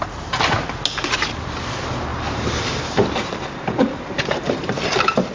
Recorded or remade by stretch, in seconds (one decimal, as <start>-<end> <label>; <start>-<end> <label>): 0.0-2.1 recorded; 2.1-5.3 remade